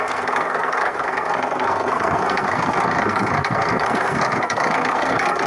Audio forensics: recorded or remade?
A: remade